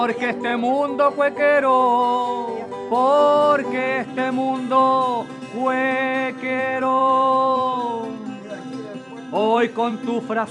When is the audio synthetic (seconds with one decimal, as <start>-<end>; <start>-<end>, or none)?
7.0-10.5